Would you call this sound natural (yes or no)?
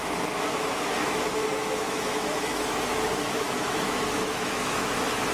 no